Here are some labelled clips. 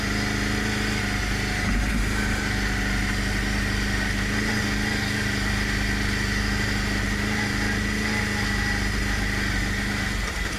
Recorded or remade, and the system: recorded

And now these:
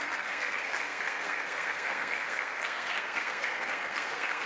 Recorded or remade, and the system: remade, codec, SNAC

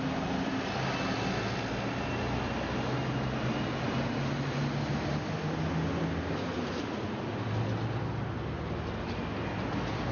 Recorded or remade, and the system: recorded